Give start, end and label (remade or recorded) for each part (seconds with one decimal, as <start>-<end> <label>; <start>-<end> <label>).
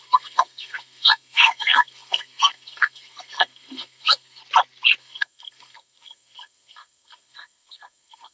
0.0-4.4 remade; 4.4-5.0 recorded; 5.0-8.3 remade